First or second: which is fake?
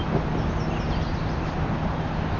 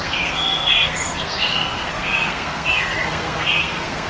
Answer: second